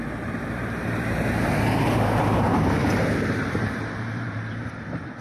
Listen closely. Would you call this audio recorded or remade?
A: remade